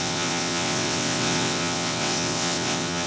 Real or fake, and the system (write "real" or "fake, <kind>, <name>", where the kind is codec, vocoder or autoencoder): fake, vocoder, WaveNeXt